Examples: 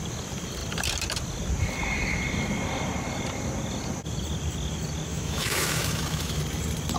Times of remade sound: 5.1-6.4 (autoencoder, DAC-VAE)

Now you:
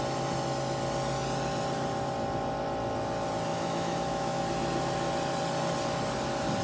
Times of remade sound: 3.5-4.4 (autoencoder, DAC-VAE)

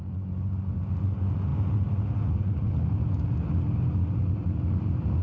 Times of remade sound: none

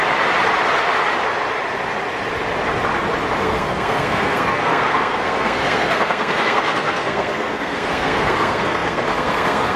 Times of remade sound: 3.4-9.8 (codec, SNAC)